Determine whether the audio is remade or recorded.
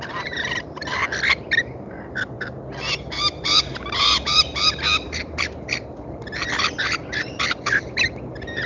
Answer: recorded